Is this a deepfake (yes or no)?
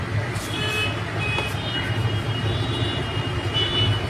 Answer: no